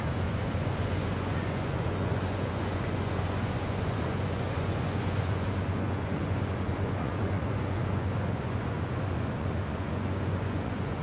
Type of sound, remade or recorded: remade